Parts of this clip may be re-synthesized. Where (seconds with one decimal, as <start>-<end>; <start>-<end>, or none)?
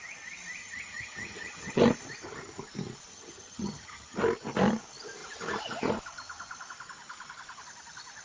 0.6-1.8; 3.1-4.2